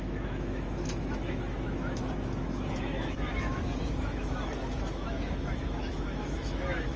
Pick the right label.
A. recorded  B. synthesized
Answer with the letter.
B